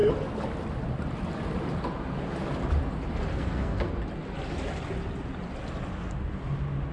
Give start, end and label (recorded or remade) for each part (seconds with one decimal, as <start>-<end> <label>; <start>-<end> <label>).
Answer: 0.0-3.3 recorded; 3.3-3.9 remade; 3.9-6.9 recorded

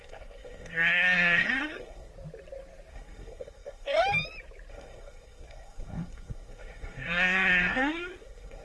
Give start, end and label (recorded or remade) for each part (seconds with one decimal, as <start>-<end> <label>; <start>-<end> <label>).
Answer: 0.0-2.1 remade; 2.1-2.9 recorded; 2.9-4.0 remade; 4.0-4.7 recorded; 4.7-8.6 remade

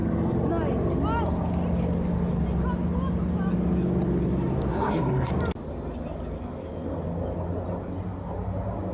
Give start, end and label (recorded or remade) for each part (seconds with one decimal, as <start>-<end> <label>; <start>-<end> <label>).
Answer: 0.0-4.7 recorded; 4.7-5.3 remade; 5.3-8.9 recorded

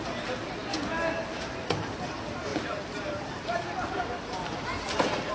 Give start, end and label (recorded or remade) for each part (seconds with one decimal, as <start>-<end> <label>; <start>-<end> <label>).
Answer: 0.0-5.3 recorded

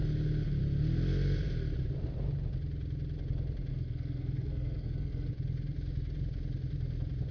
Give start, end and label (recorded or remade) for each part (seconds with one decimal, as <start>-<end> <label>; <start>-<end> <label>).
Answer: 0.0-3.7 recorded; 3.7-5.3 remade; 5.3-7.3 recorded

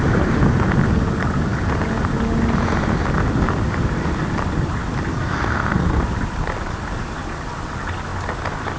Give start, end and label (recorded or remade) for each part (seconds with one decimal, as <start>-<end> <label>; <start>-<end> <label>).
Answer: 0.0-5.1 recorded; 5.1-6.0 remade; 6.0-8.8 recorded

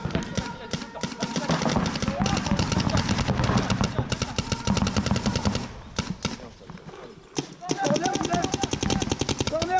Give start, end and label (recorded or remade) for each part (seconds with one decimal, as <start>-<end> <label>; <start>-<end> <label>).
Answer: 0.0-9.8 recorded

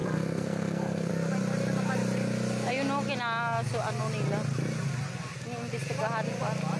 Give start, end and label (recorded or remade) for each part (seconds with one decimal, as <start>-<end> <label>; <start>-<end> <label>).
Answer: 0.0-1.1 remade; 1.1-6.8 recorded